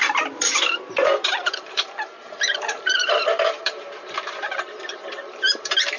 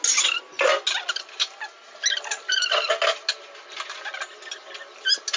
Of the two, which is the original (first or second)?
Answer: second